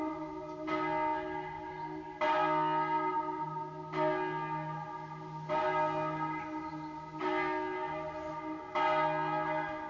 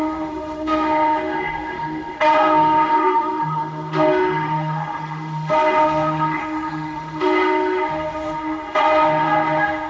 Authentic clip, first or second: first